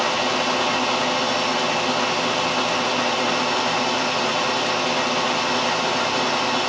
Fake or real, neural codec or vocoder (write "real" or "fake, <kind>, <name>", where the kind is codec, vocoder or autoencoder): real